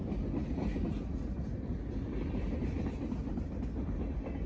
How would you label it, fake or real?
real